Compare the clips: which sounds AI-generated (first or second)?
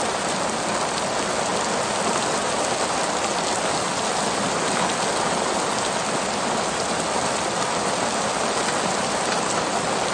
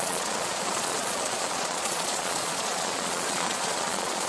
second